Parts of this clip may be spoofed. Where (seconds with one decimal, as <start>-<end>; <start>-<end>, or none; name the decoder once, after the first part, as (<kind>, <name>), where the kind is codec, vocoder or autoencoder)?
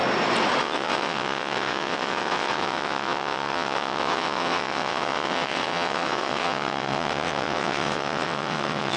0.6-9.0 (vocoder, WaveNeXt)